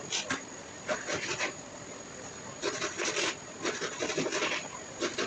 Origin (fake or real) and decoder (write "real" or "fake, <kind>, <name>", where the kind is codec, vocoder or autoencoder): fake, vocoder, BigVGAN v2